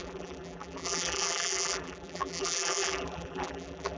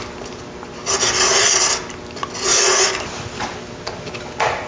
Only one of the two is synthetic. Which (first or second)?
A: first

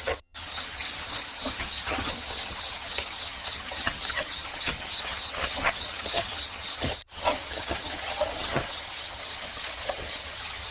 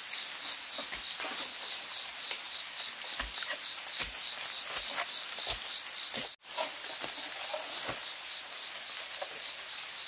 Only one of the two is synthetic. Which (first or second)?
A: first